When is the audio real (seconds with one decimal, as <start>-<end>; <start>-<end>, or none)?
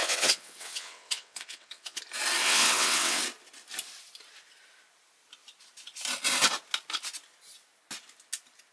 2.0-2.4; 3.2-8.7